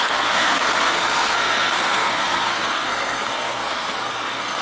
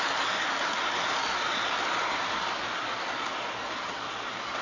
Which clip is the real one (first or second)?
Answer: second